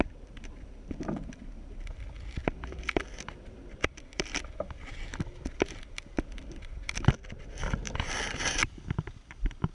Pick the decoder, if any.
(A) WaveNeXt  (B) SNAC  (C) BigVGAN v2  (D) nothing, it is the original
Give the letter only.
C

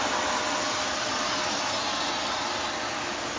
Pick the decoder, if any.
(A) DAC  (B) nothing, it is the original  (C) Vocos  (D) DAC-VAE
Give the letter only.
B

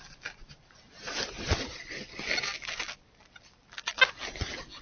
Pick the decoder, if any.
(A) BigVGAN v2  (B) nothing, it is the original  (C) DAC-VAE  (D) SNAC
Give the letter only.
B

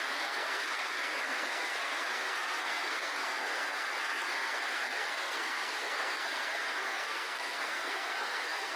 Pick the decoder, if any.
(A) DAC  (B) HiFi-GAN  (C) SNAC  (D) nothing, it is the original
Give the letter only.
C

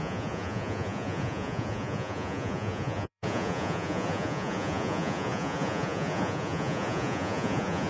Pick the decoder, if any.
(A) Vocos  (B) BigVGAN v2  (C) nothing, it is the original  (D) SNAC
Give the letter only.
A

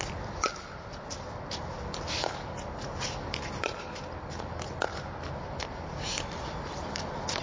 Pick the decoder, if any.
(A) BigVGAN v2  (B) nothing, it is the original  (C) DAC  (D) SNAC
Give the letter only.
B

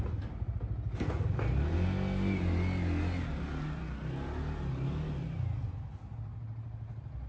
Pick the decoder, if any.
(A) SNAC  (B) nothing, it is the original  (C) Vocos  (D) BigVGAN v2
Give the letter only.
B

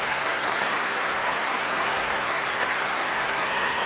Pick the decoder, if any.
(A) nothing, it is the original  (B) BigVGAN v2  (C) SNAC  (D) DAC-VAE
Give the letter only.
C